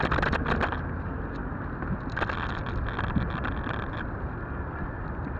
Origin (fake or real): real